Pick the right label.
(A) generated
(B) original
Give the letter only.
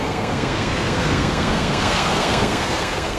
A